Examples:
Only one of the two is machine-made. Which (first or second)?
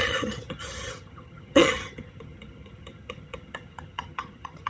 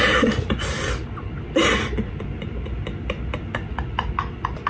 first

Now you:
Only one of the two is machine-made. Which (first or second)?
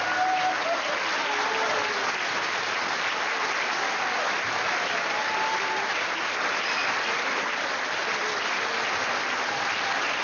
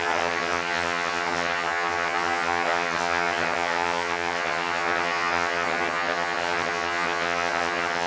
second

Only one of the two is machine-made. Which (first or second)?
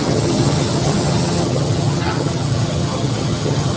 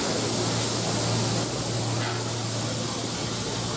first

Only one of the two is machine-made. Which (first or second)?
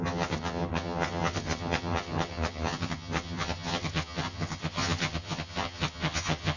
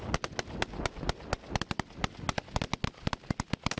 first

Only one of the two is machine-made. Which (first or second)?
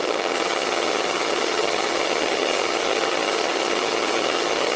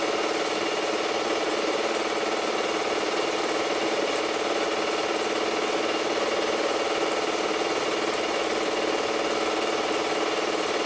first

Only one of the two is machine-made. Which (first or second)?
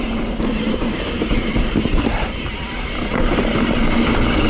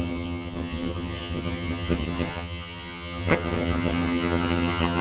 second